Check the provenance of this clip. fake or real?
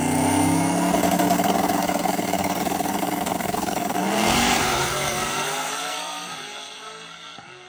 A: fake